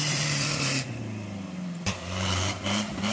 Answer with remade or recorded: remade